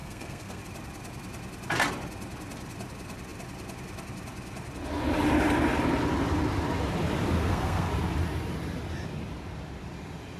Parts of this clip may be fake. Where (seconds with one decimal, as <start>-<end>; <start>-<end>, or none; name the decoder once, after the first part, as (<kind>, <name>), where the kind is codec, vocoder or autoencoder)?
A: 0.0-0.6 (codec, SNAC); 7.4-7.9